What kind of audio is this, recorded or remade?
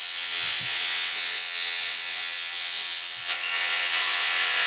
remade